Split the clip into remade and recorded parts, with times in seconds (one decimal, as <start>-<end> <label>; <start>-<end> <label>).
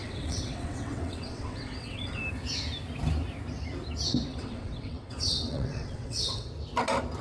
0.0-2.2 remade; 2.2-4.3 recorded; 4.3-6.5 remade; 6.5-7.2 recorded